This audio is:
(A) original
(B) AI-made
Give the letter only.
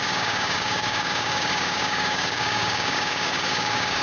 B